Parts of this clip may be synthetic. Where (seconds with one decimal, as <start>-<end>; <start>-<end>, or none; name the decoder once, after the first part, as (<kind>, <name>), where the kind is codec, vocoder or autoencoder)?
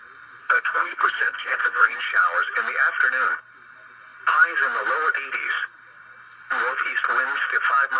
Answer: 0.4-2.0 (codec, SNAC)